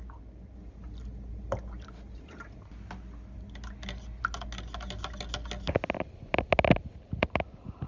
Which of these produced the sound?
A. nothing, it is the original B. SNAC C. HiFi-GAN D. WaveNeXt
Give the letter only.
A